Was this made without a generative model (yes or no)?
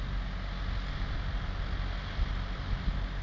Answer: yes